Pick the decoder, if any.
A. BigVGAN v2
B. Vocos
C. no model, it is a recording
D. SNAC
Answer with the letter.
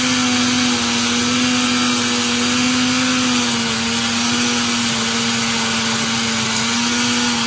C